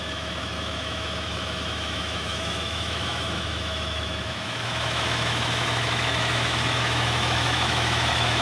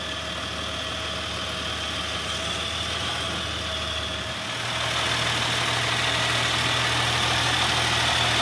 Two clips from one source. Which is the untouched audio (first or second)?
second